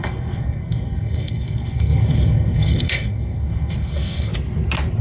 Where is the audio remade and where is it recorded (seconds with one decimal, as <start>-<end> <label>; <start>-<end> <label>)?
0.0-4.3 remade; 4.3-5.0 recorded